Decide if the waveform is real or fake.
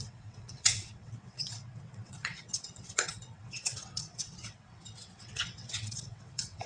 fake